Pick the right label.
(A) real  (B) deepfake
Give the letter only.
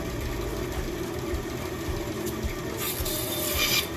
A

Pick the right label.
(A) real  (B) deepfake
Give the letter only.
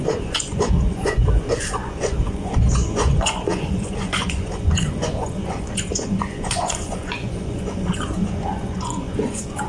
B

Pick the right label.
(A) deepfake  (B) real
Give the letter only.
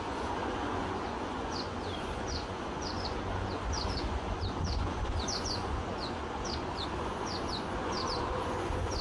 A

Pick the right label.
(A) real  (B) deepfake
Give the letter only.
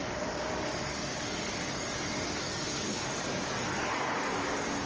B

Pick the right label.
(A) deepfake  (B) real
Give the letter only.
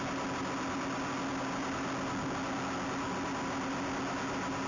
B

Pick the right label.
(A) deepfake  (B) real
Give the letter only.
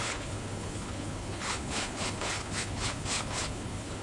A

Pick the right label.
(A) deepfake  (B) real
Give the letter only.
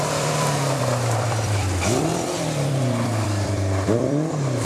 A